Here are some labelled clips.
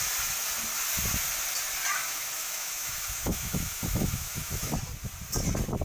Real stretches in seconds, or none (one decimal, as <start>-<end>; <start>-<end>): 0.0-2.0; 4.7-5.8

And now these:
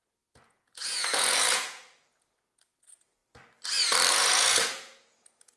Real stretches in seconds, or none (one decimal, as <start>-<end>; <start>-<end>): 3.2-4.1

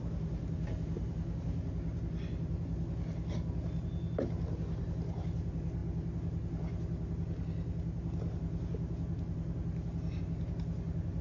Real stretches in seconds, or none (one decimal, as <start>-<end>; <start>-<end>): 0.0-11.2